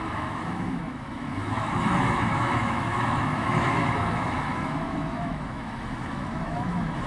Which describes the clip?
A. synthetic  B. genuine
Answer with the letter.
A